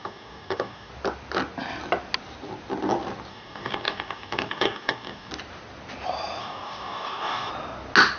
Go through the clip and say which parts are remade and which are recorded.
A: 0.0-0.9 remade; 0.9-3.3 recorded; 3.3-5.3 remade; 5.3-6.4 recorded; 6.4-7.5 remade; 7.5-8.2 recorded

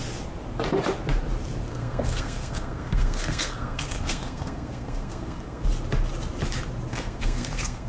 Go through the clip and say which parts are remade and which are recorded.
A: 0.0-1.7 recorded; 1.7-5.7 remade; 5.7-6.9 recorded; 6.9-7.9 remade

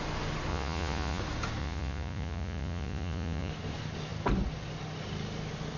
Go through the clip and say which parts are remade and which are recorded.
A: 0.0-0.5 recorded; 0.5-1.2 remade; 1.2-1.6 recorded; 1.6-3.5 remade; 3.5-5.8 recorded

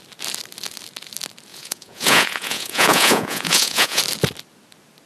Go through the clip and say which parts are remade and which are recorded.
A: 0.0-1.5 recorded; 1.5-4.0 remade; 4.0-5.1 recorded

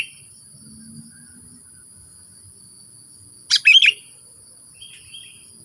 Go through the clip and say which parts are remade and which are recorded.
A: 0.0-5.6 recorded